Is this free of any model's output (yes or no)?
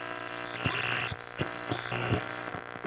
yes